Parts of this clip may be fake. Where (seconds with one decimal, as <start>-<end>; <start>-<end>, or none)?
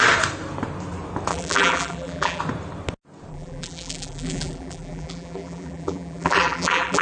1.3-2.4; 3.3-7.0